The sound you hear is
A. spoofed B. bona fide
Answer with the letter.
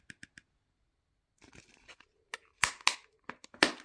B